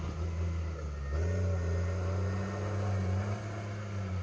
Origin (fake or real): real